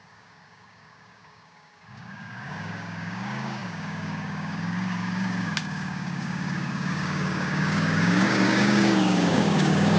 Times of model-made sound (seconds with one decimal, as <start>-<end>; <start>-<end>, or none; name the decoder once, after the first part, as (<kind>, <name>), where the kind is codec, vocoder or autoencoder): 0.0-10.0 (codec, DAC)